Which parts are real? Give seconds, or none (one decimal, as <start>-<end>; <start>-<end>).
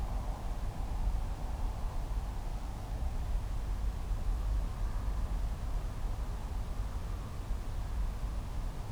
0.0-2.5; 3.1-8.9